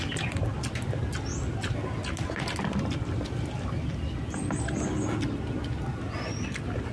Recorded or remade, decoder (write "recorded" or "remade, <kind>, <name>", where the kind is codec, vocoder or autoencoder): recorded